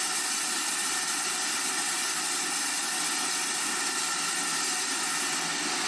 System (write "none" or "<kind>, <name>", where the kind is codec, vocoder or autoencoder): none